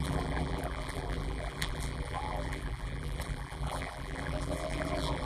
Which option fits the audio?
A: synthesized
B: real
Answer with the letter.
A